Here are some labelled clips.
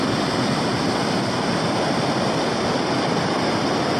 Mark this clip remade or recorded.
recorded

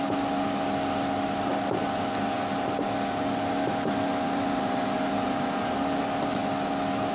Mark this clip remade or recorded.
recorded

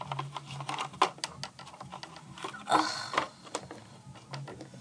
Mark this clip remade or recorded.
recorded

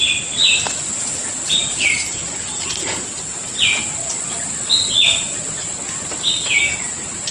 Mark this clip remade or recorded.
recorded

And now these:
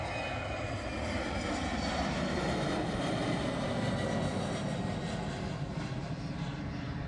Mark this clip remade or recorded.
recorded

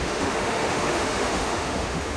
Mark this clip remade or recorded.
remade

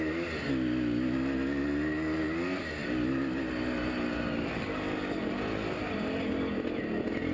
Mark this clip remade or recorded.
recorded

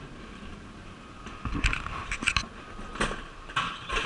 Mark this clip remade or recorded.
recorded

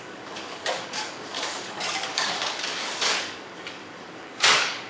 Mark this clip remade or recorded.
remade